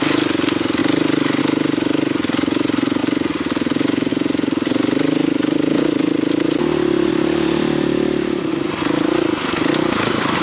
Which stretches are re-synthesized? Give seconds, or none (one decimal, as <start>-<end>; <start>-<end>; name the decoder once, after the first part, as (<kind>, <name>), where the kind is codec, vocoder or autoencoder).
0.0-6.6 (vocoder, BigVGAN v2); 7.1-10.4